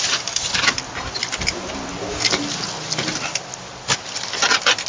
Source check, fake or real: real